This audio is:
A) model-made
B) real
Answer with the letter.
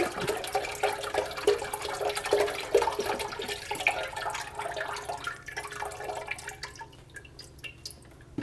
B